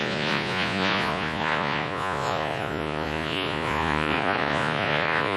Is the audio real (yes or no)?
no